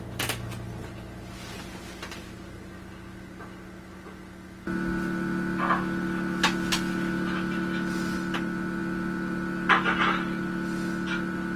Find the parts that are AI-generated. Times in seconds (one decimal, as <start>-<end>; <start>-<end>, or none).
none

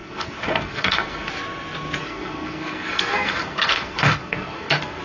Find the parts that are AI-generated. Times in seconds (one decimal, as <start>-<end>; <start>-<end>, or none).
0.0-1.3; 2.0-5.0

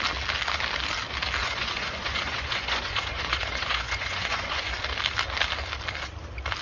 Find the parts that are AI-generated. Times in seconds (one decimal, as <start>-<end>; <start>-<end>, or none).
1.4-4.8

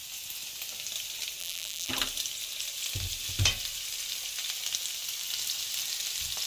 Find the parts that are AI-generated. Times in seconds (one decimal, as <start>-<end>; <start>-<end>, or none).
1.4-1.9

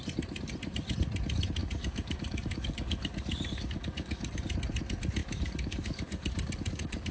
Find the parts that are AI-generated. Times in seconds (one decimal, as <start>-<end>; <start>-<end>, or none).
1.6-4.4; 5.2-7.1

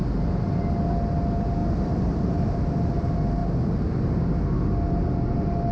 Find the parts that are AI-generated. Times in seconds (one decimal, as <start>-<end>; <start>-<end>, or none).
1.6-2.6

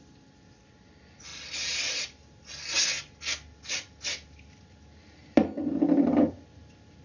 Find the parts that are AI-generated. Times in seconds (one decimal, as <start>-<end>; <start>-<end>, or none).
none